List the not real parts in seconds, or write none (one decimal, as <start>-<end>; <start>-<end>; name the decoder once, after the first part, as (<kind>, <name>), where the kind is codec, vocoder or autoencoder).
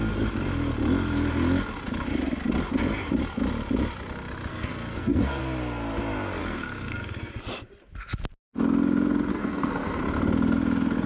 4.5-5.4 (codec, SNAC); 6.4-7.3; 9.3-10.0